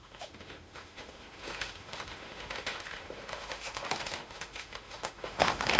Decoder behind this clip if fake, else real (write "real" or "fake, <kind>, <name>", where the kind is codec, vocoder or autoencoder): fake, autoencoder, DAC-VAE